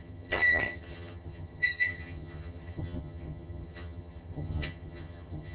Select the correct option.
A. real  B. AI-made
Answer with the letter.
B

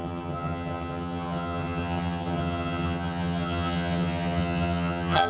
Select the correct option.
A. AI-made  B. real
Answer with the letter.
A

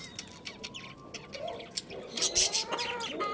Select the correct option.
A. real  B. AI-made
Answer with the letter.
A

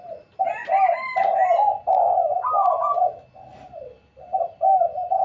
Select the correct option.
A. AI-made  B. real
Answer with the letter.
B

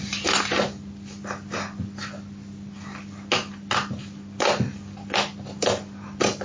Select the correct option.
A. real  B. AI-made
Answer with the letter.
A